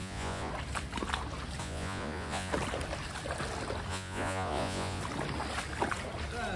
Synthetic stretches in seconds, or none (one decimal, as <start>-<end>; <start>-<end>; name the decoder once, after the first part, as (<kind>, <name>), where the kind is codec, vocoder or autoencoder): 0.0-0.5 (vocoder, Vocos); 1.6-2.5; 3.9-5.0